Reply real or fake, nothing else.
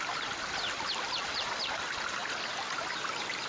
real